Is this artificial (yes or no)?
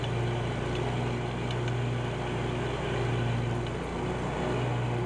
no